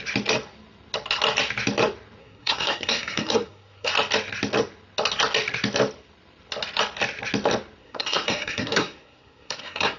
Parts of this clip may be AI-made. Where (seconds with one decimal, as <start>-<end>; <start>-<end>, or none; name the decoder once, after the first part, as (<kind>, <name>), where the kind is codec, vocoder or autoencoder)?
2.2-3.9 (codec, SNAC); 7.8-10.0

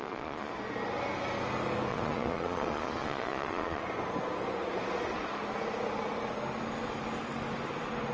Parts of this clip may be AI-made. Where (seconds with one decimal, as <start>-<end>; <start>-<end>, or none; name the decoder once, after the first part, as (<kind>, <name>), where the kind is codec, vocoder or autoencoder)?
0.0-0.5 (vocoder, Vocos); 1.9-3.8

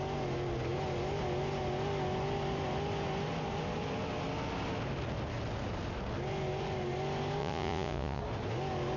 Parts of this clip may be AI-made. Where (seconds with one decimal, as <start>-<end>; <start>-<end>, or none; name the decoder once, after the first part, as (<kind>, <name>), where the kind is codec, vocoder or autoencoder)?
7.4-8.2 (vocoder, Vocos)

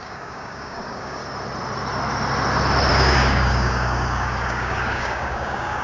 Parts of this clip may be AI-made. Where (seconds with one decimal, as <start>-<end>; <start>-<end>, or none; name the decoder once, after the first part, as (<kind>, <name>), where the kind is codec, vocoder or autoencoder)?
0.0-1.2 (codec, DAC); 2.9-5.8

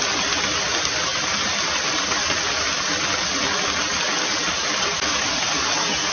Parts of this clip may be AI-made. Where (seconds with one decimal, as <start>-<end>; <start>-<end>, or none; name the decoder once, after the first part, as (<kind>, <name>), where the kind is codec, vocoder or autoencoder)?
none

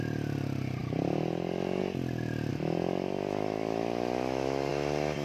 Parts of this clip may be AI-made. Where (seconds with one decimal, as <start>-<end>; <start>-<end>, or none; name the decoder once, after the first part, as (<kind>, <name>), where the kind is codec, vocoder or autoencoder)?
2.5-4.7 (autoencoder, DAC-VAE)

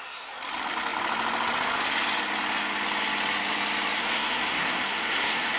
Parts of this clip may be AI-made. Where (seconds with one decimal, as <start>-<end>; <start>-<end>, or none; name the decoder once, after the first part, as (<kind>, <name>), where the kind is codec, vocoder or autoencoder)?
4.0-5.6 (codec, SNAC)

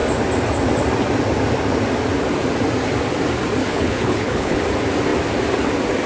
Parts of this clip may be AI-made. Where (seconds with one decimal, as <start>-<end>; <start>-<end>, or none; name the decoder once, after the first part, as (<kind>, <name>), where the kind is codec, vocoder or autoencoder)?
3.6-4.6 (codec, HILCodec)